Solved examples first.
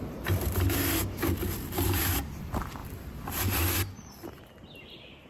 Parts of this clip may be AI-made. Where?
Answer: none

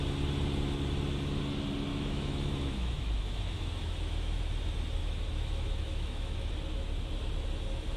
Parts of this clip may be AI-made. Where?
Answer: 1.9-4.4 (autoencoder, DAC-VAE); 5.0-6.5

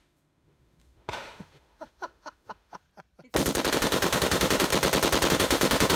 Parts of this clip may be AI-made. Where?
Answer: 0.0-2.8 (autoencoder, DAC-VAE); 3.7-4.7; 5.3-6.0

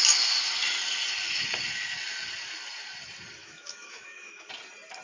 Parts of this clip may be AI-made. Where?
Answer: 3.4-4.5 (autoencoder, DAC-VAE)

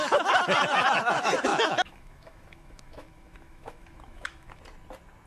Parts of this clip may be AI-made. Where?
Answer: 1.5-4.6 (autoencoder, DAC-VAE)

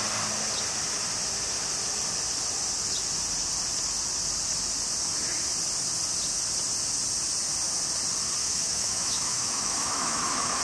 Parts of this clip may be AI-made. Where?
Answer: 8.4-10.6 (autoencoder, DAC-VAE)

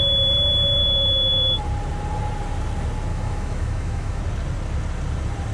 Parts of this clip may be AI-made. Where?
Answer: 0.8-1.6 (autoencoder, DAC-VAE); 3.1-4.2

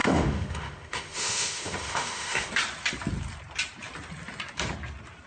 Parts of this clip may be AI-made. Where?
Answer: 0.0-2.5 (autoencoder, DAC-VAE)